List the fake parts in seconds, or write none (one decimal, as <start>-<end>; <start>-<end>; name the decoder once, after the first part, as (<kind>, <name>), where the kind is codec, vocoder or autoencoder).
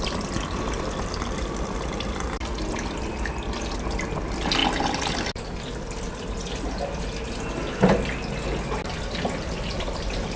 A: none